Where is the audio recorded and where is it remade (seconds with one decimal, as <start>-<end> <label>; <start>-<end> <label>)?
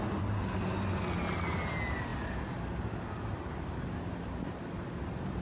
0.0-5.4 recorded